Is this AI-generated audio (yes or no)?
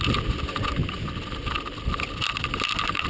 no